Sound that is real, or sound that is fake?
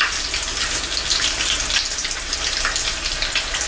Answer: real